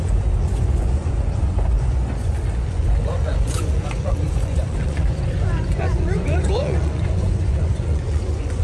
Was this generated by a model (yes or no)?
yes